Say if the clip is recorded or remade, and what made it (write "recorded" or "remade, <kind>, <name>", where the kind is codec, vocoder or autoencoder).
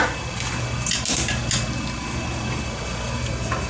recorded